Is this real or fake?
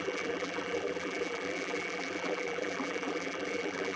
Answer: fake